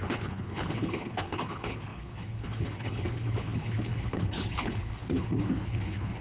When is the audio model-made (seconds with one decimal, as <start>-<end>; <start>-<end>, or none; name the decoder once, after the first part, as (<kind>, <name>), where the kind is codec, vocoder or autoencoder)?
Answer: 0.0-6.2 (codec, HILCodec)